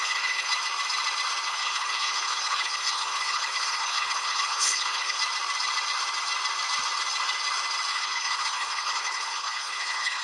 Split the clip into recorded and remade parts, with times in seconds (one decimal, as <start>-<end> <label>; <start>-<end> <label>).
0.0-0.5 remade; 0.5-1.5 recorded; 1.5-5.2 remade; 5.2-7.9 recorded; 7.9-10.2 remade